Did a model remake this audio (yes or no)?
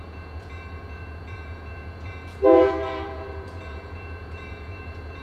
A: yes